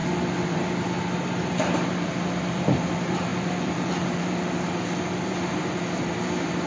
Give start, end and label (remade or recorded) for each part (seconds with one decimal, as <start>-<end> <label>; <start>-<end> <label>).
0.0-2.5 recorded; 2.5-6.7 remade